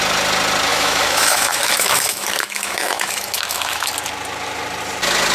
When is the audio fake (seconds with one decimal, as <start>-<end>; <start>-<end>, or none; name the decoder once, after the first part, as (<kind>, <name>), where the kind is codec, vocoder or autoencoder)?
0.7-3.9 (autoencoder, DAC-VAE)